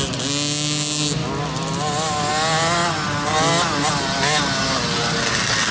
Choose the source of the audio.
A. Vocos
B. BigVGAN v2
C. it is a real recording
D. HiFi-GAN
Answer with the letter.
C